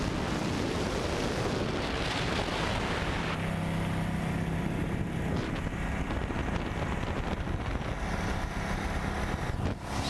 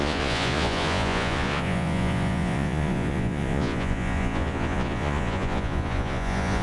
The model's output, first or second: second